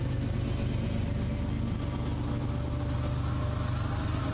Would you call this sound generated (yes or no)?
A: no